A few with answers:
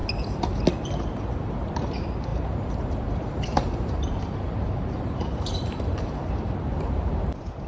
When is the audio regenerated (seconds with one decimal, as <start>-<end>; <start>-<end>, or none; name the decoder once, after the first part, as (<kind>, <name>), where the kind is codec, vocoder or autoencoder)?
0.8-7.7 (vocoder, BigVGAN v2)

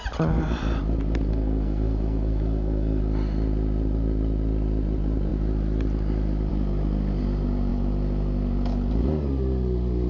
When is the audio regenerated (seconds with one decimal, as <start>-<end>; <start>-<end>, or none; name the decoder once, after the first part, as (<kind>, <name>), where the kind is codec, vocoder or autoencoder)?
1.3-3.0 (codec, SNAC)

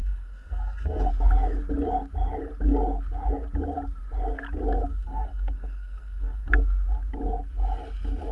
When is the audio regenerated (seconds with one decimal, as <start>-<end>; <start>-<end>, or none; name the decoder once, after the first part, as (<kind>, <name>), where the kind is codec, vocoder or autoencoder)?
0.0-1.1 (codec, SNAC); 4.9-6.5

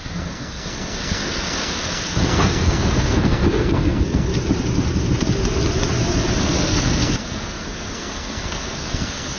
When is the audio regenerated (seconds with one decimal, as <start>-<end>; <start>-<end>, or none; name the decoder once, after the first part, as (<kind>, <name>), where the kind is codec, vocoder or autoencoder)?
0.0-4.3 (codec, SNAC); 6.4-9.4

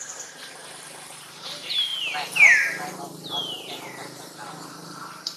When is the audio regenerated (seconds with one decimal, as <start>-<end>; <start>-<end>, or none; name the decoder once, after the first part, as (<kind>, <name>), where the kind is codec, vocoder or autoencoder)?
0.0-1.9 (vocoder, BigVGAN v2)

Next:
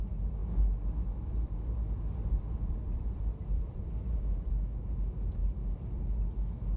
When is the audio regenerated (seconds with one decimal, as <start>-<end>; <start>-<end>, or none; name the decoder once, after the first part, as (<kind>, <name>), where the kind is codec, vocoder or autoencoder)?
0.4-4.5 (vocoder, BigVGAN v2); 5.4-6.0

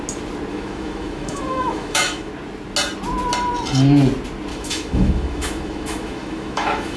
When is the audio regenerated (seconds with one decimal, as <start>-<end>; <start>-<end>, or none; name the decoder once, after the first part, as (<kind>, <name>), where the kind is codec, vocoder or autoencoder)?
0.5-2.3 (autoencoder, DAC-VAE); 4.5-7.0

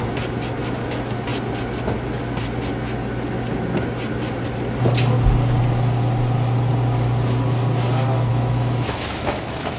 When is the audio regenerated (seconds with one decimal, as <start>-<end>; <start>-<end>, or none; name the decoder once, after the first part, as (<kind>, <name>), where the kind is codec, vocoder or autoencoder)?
8.3-9.8 (autoencoder, DAC-VAE)